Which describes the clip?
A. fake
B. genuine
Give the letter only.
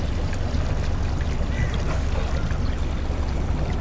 B